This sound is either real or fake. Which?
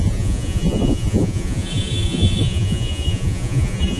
fake